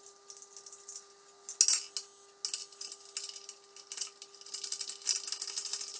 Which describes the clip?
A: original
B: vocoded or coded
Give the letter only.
A